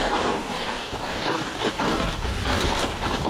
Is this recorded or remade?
remade